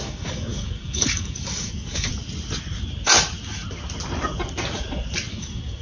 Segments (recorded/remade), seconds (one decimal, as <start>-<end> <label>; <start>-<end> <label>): 0.0-2.1 remade; 2.1-5.3 recorded; 5.3-5.8 remade